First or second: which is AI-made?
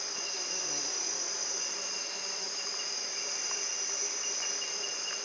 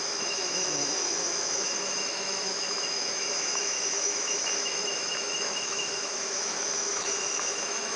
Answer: second